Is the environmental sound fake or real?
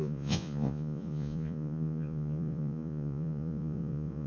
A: fake